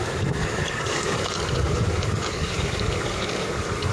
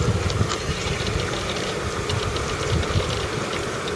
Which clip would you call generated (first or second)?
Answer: first